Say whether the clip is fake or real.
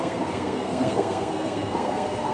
fake